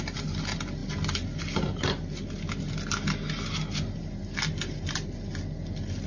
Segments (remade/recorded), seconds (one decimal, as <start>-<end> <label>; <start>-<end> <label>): 0.0-6.1 recorded